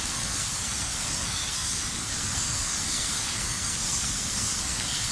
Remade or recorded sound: remade